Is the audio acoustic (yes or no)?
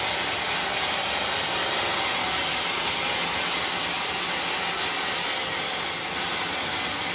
yes